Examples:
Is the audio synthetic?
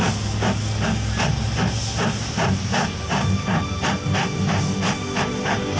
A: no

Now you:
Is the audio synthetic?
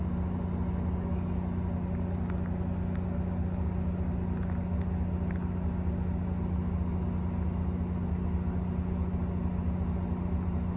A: no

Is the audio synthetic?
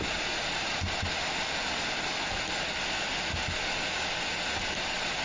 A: no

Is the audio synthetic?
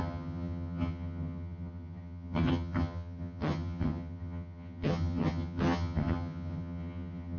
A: yes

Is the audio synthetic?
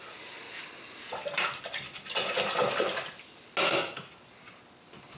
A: no